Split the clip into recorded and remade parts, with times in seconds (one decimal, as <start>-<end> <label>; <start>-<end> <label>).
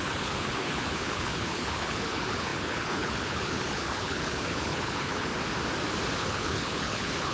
0.0-5.3 remade; 5.3-6.2 recorded; 6.2-7.3 remade